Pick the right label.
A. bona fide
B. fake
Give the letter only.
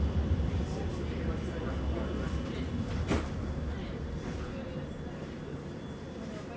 A